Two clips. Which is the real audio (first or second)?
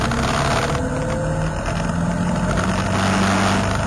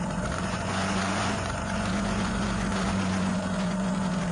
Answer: first